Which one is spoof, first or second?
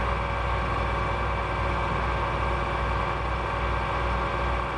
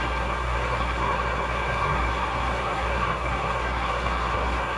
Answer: second